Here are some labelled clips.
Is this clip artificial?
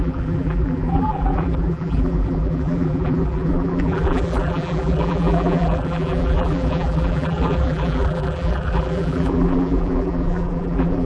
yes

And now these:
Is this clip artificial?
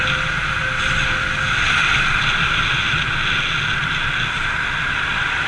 no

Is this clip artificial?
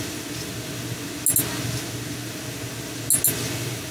no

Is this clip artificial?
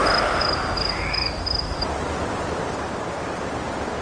yes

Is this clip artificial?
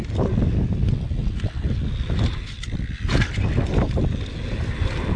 no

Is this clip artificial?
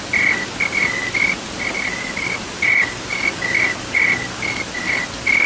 no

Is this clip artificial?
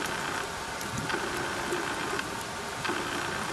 no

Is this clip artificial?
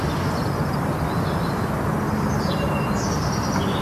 no